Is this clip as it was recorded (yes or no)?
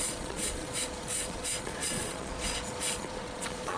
no